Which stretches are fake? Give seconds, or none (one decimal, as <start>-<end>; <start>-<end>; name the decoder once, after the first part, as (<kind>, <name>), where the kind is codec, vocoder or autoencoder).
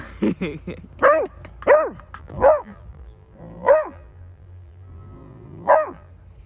2.2-6.1 (vocoder, BigVGAN v2)